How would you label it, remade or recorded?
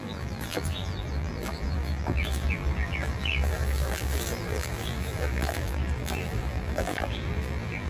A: remade